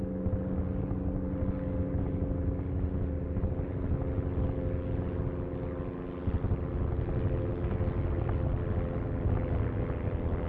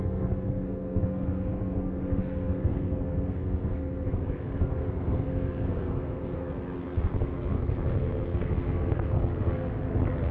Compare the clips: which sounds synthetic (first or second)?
second